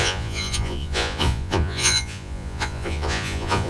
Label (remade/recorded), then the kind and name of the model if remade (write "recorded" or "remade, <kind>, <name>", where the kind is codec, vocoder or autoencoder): remade, vocoder, Vocos